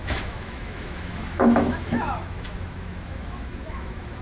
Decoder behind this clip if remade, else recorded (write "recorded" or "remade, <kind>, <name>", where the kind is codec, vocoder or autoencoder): remade, autoencoder, DAC-VAE